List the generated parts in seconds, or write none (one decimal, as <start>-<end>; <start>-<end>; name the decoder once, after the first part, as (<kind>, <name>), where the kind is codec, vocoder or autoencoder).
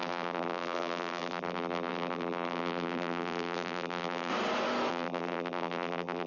0.0-4.3 (vocoder, BigVGAN v2); 4.9-6.3